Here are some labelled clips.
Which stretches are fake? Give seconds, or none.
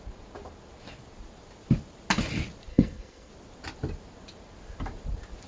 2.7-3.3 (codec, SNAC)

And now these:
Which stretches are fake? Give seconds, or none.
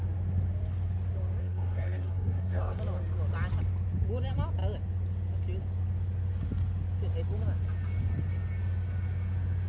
1.4-2.8 (codec, SNAC)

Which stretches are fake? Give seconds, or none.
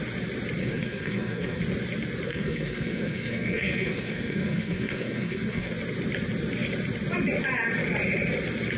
0.6-1.6 (codec, SNAC); 2.3-5.7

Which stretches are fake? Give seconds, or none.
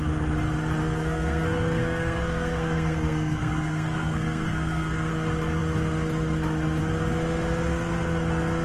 0.8-5.1 (codec, SNAC)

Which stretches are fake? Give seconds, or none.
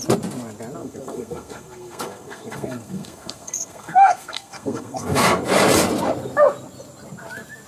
0.8-5.4 (codec, SNAC)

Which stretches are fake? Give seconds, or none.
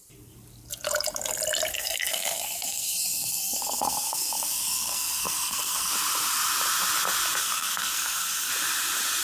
1.7-5.9 (codec, SNAC); 7.4-8.5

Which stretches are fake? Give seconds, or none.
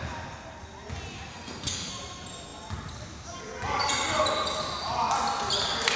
1.3-1.9 (codec, SNAC)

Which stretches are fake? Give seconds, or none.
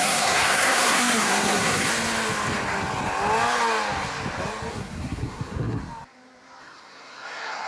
0.0-1.9 (codec, SNAC); 4.7-5.8; 6.6-7.7